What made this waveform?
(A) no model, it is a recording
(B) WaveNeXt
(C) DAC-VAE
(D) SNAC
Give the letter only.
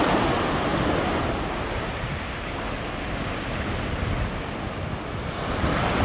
A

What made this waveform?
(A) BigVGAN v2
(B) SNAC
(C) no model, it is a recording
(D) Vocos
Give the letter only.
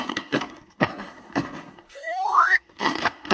B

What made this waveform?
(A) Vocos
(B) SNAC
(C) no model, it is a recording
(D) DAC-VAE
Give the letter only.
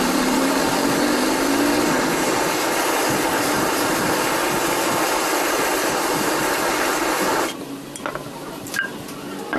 C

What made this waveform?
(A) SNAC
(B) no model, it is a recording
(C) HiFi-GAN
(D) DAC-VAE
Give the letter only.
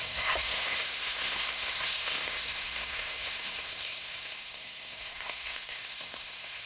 A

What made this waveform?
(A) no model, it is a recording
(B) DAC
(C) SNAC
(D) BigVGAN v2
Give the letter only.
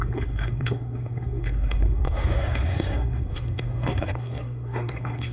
C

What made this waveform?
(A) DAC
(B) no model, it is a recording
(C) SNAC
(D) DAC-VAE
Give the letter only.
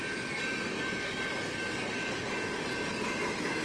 B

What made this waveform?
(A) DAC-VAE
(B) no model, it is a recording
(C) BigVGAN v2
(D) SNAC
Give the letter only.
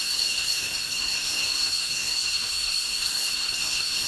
D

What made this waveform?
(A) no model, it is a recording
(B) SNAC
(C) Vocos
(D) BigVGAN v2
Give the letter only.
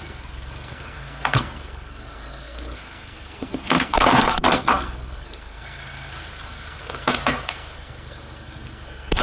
B